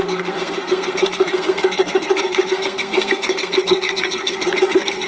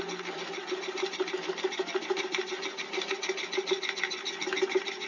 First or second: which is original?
second